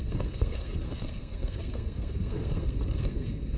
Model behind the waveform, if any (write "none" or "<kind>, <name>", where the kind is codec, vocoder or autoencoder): codec, SNAC